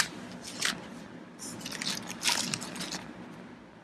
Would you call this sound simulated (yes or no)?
no